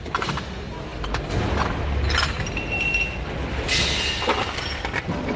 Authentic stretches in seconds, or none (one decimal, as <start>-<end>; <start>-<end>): 0.0-5.4